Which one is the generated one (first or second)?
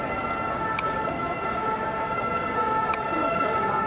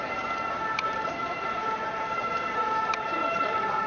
second